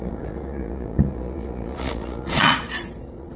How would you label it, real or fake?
fake